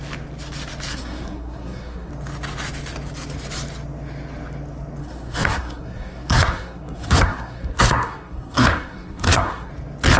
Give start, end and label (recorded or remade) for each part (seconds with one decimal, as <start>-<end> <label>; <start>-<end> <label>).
0.0-0.9 recorded; 0.9-2.1 remade; 2.1-5.0 recorded; 5.0-9.7 remade; 9.7-10.2 recorded